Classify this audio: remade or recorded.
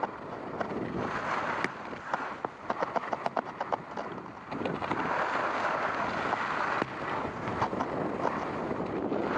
recorded